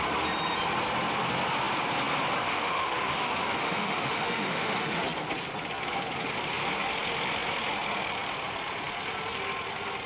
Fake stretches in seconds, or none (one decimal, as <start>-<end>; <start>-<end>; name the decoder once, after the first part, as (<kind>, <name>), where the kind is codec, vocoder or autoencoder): 2.4-5.0 (autoencoder, DAC-VAE)

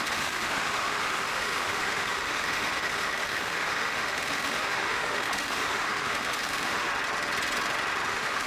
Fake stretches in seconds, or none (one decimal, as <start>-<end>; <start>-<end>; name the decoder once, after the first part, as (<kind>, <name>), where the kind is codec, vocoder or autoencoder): 0.0-6.9 (autoencoder, DAC-VAE); 8.1-8.5

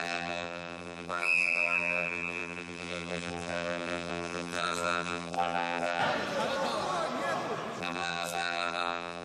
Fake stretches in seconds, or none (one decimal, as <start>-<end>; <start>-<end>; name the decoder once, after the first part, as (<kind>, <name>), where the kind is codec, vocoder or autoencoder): 0.0-6.0 (vocoder, BigVGAN v2); 7.8-9.2

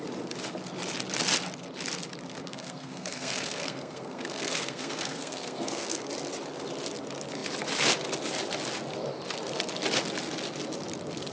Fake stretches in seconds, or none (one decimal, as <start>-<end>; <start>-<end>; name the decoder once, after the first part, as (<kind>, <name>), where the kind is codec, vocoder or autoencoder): 2.4-6.1 (codec, SNAC)